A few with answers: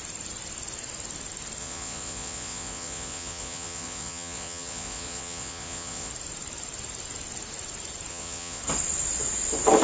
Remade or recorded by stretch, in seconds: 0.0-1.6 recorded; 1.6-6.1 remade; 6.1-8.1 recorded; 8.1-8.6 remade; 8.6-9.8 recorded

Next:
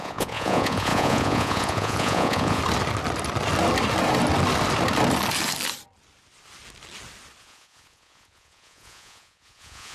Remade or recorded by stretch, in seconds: 0.0-2.6 remade; 2.6-7.4 recorded; 7.4-9.9 remade